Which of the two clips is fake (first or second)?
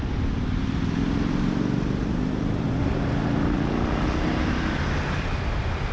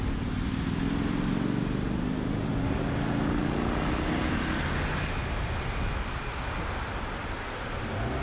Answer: first